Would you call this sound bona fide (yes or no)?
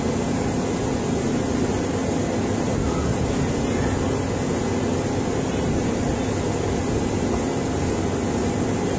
yes